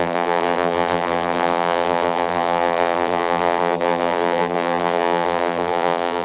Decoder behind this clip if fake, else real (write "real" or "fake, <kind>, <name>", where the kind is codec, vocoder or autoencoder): fake, vocoder, BigVGAN v2